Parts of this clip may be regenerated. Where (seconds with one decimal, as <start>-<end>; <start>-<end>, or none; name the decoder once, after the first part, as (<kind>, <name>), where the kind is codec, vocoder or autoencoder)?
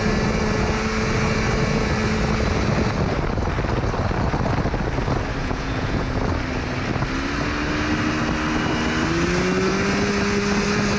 5.4-6.3 (vocoder, Vocos)